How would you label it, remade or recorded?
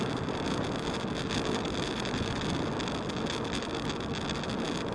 recorded